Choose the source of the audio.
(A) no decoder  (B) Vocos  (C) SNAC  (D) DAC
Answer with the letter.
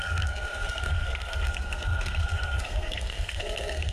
C